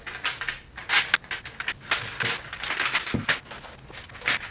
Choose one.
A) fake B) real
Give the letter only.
B